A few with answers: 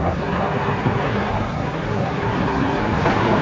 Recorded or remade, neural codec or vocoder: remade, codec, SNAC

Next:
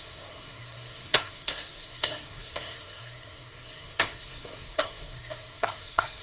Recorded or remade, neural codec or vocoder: remade, codec, SNAC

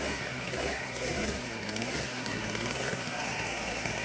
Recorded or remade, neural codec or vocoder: remade, codec, SNAC